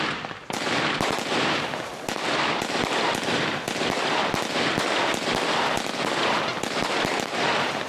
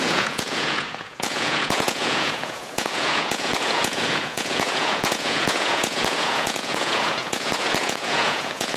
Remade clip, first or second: second